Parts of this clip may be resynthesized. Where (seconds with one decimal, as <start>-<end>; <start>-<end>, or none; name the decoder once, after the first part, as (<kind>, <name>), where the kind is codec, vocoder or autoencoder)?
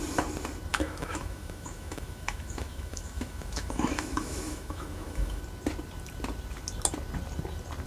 0.7-5.4 (autoencoder, DAC-VAE)